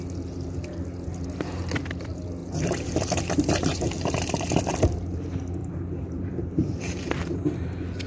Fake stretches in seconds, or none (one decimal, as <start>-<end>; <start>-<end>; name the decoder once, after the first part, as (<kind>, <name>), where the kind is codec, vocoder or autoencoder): 2.4-4.6 (vocoder, BigVGAN v2); 5.6-8.1